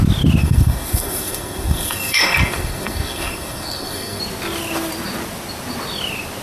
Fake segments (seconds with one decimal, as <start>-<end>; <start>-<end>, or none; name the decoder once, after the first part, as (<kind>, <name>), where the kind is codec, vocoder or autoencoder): 0.4-4.2 (codec, SNAC)

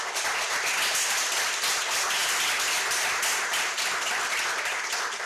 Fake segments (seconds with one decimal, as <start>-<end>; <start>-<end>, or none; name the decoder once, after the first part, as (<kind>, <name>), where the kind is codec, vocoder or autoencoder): none

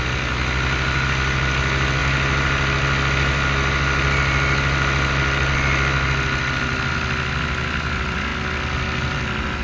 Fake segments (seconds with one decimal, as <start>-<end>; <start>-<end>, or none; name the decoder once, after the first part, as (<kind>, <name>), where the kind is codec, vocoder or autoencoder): none

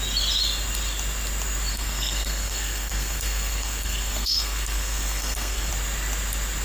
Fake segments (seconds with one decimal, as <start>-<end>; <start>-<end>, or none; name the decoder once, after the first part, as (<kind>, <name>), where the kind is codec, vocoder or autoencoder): 1.7-5.7 (codec, SNAC)

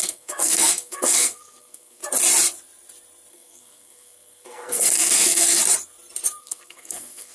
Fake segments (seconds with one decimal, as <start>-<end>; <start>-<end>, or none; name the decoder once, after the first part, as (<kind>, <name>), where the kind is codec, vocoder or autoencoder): 0.0-2.0 (codec, SNAC); 3.3-5.6; 6.4-7.3